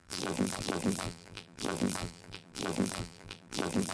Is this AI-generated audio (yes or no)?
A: yes